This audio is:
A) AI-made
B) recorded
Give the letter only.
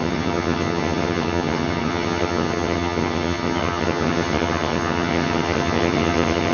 A